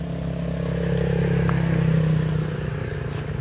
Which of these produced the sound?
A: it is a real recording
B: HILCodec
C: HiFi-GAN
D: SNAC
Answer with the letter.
A